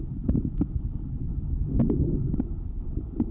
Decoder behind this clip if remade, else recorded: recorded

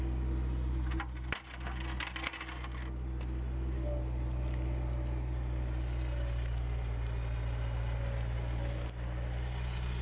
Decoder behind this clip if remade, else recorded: recorded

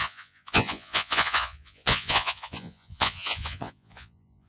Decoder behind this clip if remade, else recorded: remade, vocoder, Vocos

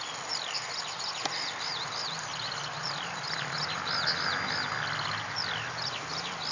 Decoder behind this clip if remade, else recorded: recorded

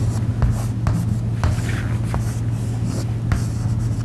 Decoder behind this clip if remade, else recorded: recorded